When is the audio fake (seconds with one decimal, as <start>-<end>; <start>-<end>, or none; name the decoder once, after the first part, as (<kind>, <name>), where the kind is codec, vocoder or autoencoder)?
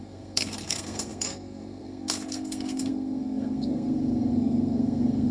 0.0-5.3 (codec, SNAC)